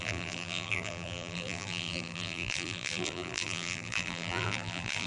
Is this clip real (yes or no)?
no